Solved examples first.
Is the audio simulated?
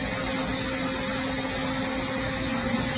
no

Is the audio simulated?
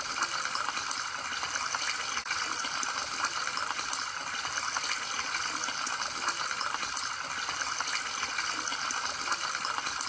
no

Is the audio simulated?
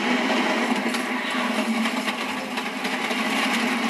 no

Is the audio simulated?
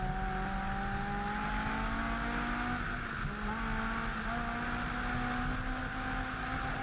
no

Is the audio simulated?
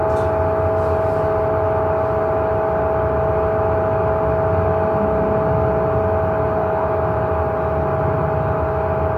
no